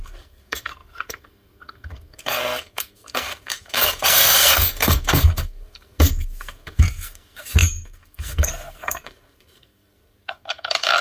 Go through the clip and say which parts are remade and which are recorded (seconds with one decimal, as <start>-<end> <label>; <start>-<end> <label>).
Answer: 0.0-11.0 remade